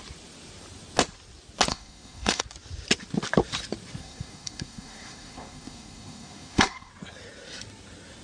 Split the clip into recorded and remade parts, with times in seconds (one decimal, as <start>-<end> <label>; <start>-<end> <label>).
0.0-1.7 recorded; 1.7-2.4 remade; 2.4-4.0 recorded; 4.0-6.9 remade; 6.9-8.2 recorded